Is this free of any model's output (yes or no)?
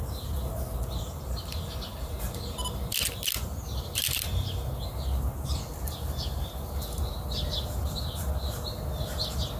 yes